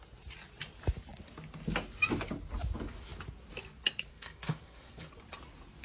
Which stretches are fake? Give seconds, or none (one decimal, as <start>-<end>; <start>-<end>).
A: 4.1-5.1

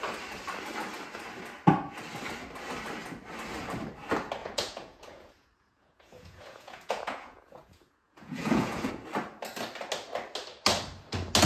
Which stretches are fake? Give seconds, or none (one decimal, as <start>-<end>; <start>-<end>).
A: 4.4-8.9

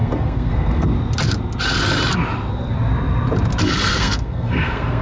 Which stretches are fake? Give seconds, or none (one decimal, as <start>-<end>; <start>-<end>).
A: 0.0-0.9; 3.9-5.0